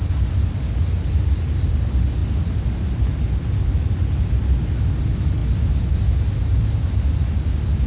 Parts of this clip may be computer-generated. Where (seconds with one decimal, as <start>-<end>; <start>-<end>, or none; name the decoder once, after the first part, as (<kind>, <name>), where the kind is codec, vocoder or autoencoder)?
none

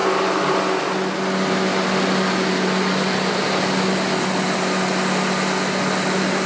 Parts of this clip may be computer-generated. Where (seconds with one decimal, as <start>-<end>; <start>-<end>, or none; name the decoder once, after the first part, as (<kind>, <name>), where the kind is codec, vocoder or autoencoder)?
none

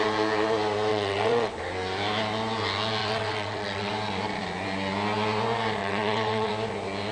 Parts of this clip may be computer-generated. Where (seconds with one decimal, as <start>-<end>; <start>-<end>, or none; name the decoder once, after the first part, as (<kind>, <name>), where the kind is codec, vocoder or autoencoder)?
0.9-1.5 (vocoder, WaveNeXt); 3.0-3.9; 5.8-6.5

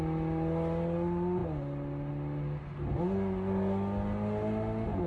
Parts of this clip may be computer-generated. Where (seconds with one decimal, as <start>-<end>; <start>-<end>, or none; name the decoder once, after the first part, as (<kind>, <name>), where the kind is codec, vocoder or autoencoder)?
none

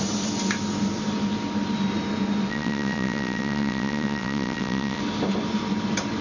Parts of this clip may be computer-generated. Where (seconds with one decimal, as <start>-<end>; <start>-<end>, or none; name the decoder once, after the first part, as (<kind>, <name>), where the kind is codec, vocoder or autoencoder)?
2.5-5.0 (vocoder, WaveNeXt)

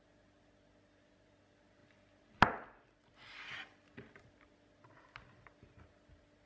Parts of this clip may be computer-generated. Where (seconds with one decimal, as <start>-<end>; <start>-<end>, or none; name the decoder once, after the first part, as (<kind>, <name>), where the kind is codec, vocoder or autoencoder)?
none